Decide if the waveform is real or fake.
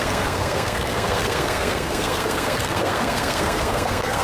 fake